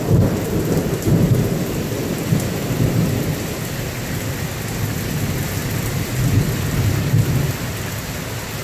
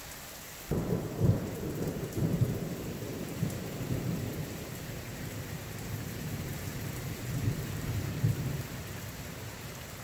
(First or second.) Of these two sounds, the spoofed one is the second